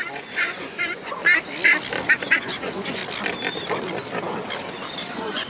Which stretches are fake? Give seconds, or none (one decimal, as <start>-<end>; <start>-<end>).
0.0-1.2; 2.2-3.0; 5.1-5.5